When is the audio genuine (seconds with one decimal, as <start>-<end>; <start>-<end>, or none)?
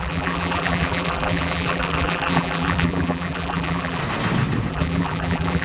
4.0-4.7